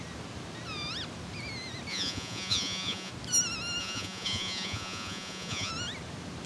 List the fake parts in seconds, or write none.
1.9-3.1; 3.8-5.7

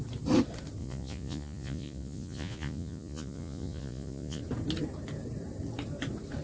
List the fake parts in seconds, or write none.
0.8-4.4

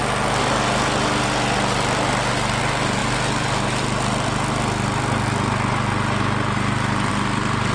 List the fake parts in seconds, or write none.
none

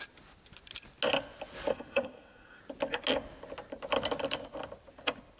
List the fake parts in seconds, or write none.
1.7-2.6

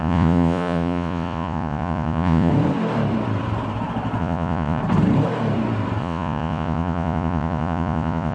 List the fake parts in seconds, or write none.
0.0-2.5; 4.2-4.8; 6.0-8.3

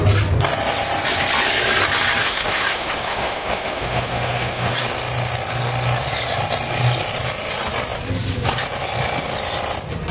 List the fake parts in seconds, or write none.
2.2-4.7